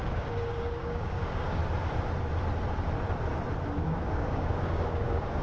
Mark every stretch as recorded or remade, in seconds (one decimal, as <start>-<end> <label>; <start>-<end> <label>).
0.0-1.6 remade; 1.6-3.8 recorded; 3.8-5.4 remade